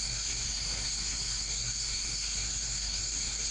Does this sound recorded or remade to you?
remade